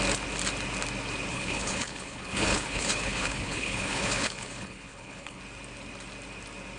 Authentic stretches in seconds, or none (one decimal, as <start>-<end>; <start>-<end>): 0.0-1.3; 5.4-6.8